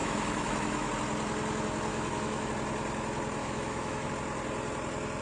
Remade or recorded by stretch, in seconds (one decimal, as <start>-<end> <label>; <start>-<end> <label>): 0.0-0.9 remade; 0.9-1.9 recorded; 1.9-2.5 remade; 2.5-3.4 recorded; 3.4-4.1 remade; 4.1-5.2 recorded